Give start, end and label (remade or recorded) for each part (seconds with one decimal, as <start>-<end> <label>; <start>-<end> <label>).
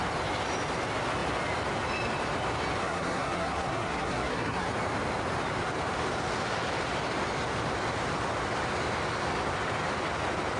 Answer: 0.0-2.8 recorded; 2.8-4.7 remade; 4.7-10.6 recorded